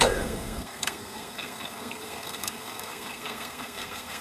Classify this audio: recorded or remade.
remade